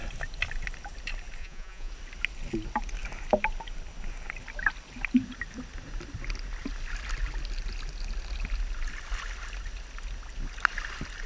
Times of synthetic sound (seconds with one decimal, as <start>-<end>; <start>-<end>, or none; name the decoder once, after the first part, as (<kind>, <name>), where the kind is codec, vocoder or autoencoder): 1.4-1.9 (vocoder, Vocos)

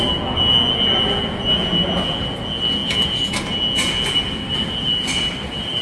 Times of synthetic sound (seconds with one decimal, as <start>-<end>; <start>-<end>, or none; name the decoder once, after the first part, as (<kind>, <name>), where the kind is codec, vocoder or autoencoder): none

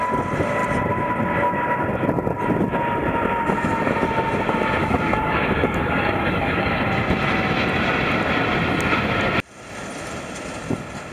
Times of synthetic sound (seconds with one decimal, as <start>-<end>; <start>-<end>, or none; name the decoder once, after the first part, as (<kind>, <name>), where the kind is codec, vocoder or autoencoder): 4.8-6.8 (codec, DAC)

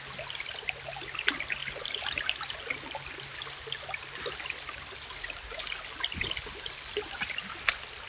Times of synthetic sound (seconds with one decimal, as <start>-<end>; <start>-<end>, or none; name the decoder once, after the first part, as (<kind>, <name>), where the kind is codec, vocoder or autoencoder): 1.6-2.2 (vocoder, BigVGAN v2)

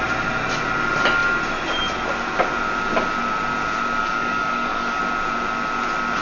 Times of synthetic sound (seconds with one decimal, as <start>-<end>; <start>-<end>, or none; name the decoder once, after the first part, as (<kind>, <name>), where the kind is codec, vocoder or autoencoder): 4.0-5.0 (codec, DAC)

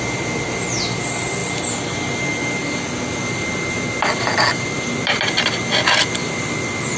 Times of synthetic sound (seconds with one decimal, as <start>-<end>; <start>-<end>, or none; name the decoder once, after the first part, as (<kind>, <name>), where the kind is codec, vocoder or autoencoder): none